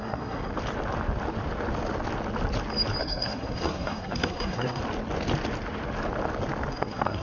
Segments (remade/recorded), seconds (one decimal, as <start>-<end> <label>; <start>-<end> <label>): 0.0-0.5 remade; 0.5-3.0 recorded; 3.0-4.8 remade; 4.8-6.7 recorded; 6.7-7.2 remade

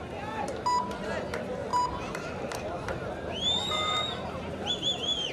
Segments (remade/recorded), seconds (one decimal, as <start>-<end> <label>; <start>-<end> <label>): 0.0-5.3 recorded

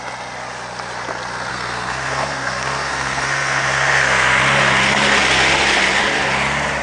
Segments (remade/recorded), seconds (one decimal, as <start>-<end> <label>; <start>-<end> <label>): 0.0-1.5 recorded; 1.5-4.4 remade; 4.4-6.8 recorded

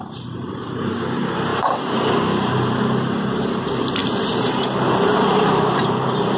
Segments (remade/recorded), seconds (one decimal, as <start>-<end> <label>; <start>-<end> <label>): 0.0-6.4 remade

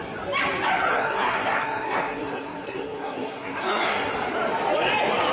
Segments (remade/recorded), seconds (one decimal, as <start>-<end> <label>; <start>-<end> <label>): 0.0-0.9 recorded; 0.9-4.1 remade; 4.1-5.3 recorded

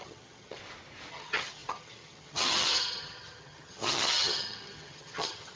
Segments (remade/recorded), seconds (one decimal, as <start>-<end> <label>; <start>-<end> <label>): 0.0-0.6 remade; 0.6-1.1 recorded; 1.1-5.6 remade